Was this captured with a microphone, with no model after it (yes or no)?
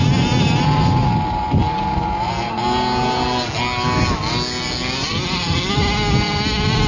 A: yes